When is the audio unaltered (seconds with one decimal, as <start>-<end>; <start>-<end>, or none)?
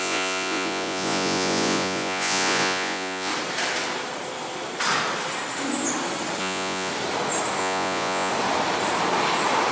3.3-6.4; 6.9-7.6; 8.3-9.7